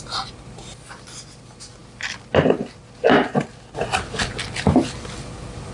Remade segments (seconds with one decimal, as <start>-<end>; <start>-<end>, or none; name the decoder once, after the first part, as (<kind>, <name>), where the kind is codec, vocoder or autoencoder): none